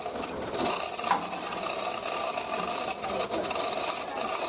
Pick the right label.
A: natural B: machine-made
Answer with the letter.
A